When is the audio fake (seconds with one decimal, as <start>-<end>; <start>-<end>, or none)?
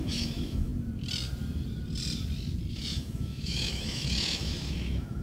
0.0-0.7; 2.7-5.2